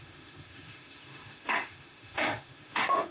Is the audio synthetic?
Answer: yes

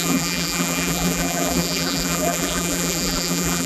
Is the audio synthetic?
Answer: yes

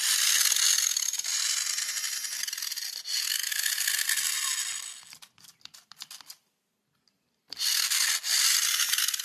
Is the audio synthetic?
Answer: no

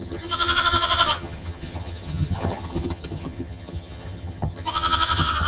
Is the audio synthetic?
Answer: yes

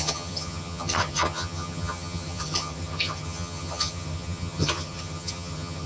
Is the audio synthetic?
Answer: yes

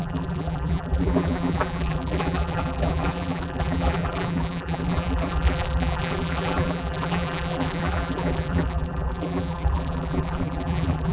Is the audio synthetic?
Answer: yes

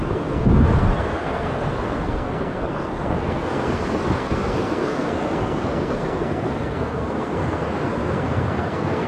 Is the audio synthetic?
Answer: yes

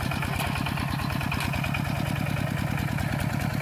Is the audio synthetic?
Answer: no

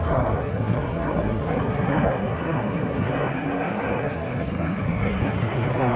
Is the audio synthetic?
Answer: yes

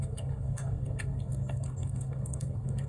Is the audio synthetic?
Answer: yes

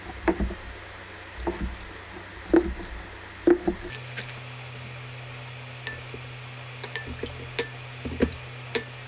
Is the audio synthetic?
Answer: no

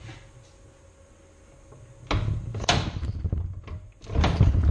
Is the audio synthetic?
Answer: no